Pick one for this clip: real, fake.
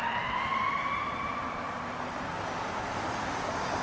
real